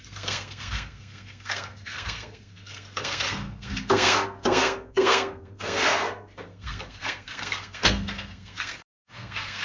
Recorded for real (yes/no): no